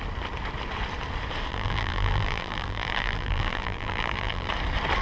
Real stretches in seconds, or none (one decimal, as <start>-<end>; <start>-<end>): 0.0-1.5; 4.5-5.0